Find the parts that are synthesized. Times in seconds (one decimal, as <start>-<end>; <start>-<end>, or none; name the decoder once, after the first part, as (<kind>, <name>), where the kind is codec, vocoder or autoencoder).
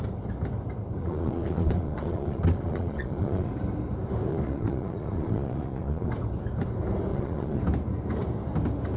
1.0-3.5 (vocoder, Vocos); 4.3-6.1; 7.1-7.6